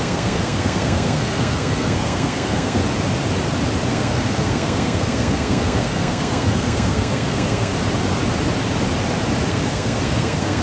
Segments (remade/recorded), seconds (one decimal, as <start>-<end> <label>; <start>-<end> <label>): 0.0-2.8 remade; 2.8-3.9 recorded; 3.9-7.7 remade; 7.7-9.5 recorded; 9.5-10.6 remade